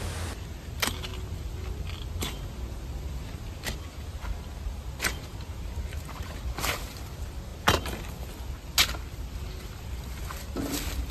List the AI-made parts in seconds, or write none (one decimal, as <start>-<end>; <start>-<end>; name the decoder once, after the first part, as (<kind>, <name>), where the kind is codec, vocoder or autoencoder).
none